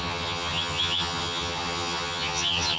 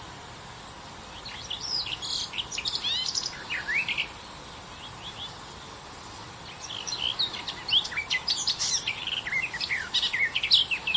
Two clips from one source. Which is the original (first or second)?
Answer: second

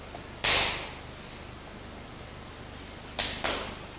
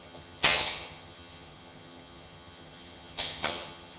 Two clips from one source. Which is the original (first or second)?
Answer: first